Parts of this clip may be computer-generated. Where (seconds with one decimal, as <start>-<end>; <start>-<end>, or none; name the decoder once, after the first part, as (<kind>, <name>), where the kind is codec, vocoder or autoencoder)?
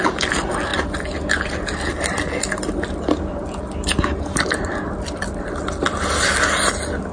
none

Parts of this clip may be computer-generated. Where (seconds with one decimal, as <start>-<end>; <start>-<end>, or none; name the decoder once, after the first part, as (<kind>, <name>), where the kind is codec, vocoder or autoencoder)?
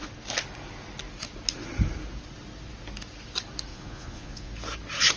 3.7-4.5 (vocoder, Vocos)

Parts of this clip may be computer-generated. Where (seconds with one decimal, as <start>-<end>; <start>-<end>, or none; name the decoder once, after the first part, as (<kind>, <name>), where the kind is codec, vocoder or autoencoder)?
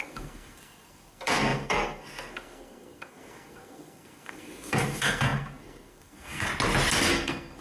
0.0-6.5 (codec, SNAC); 7.1-7.6